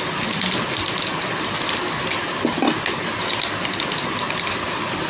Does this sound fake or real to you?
real